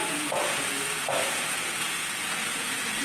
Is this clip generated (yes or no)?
yes